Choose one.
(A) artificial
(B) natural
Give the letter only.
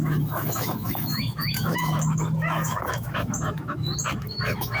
A